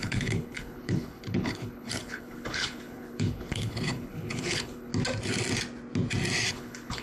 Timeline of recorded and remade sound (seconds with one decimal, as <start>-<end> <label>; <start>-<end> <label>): 0.0-4.9 remade; 4.9-6.5 recorded; 6.5-7.0 remade